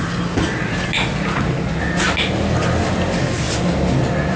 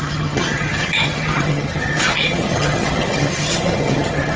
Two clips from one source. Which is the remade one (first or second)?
second